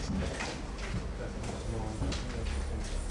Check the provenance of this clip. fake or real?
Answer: real